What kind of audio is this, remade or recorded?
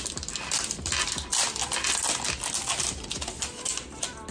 recorded